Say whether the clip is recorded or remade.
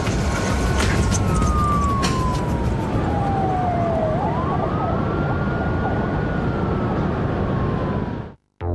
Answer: recorded